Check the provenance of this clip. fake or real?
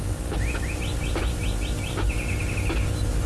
real